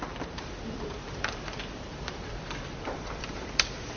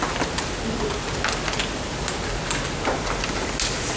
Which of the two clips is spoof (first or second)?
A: first